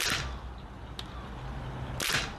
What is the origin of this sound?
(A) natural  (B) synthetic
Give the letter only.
A